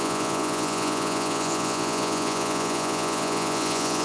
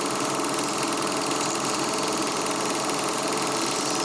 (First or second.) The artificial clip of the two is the first